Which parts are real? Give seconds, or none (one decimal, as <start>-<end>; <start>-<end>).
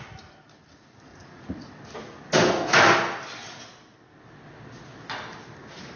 0.0-1.1; 1.7-6.0